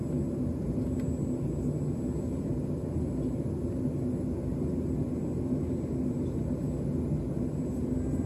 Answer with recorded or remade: recorded